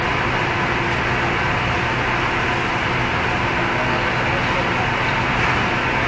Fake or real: real